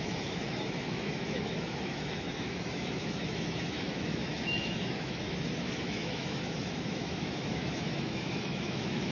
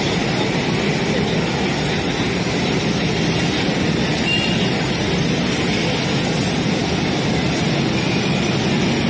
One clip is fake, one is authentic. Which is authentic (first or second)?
second